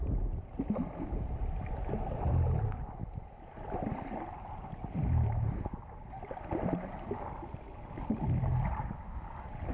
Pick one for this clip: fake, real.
real